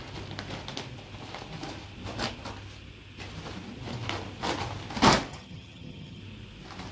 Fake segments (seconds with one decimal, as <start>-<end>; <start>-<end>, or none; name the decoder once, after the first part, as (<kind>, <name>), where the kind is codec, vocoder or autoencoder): 5.3-6.2 (vocoder, HiFi-GAN)